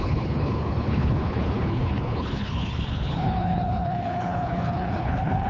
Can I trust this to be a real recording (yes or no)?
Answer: no